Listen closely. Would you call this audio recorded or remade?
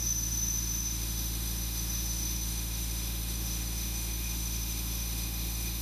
remade